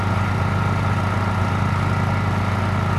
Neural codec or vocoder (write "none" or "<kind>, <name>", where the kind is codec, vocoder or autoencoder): none